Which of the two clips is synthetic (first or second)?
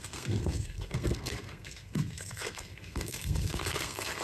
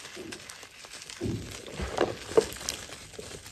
first